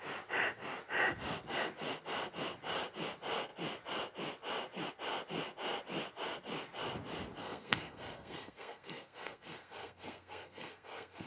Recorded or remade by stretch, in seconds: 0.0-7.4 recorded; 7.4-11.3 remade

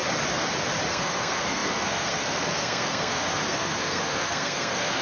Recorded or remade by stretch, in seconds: 0.0-0.9 recorded; 0.9-5.0 remade

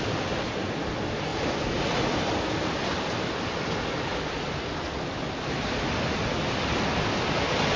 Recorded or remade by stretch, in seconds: 0.0-7.8 recorded

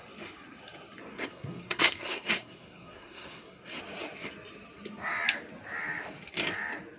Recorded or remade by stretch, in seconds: 0.0-1.1 recorded; 1.1-3.8 remade; 3.8-7.0 recorded

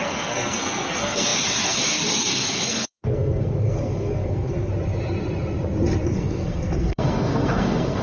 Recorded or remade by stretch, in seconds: 0.0-4.7 remade; 4.7-6.0 recorded; 6.0-8.0 remade

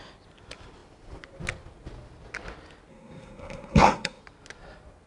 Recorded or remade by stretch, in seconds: 0.0-2.9 recorded; 2.9-4.2 remade; 4.2-5.1 recorded

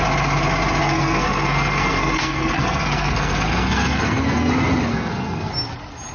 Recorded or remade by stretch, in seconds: 0.0-0.8 recorded; 0.8-4.5 remade; 4.5-4.9 recorded; 4.9-5.5 remade; 5.5-6.1 recorded

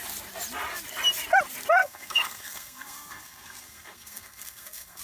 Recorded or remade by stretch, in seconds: 0.0-1.8 recorded; 1.8-5.0 remade